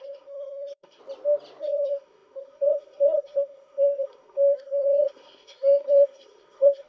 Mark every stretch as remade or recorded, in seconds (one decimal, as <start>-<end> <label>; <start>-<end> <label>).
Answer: 0.0-1.0 remade; 1.0-1.6 recorded; 1.6-6.9 remade